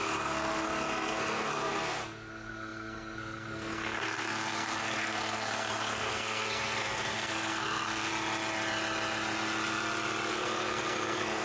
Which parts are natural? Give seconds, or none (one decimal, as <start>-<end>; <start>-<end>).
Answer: 8.1-10.3